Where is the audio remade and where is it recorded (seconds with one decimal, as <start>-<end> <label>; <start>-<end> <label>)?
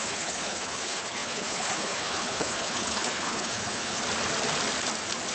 0.0-4.0 remade; 4.0-5.3 recorded